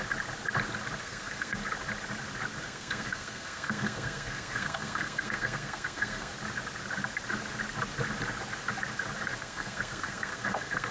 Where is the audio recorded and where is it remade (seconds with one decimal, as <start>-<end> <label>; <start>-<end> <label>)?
0.0-1.0 recorded; 1.0-1.6 remade; 1.6-2.6 recorded; 2.6-6.3 remade; 6.3-9.4 recorded; 9.4-10.9 remade